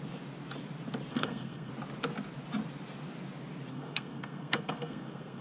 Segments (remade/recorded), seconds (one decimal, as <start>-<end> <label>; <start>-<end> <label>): 0.0-1.1 recorded; 1.1-1.7 remade; 1.7-3.7 recorded; 3.7-5.4 remade